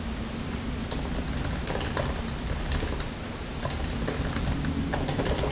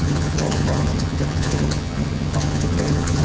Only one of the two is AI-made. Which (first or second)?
second